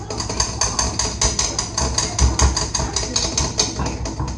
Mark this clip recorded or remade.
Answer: recorded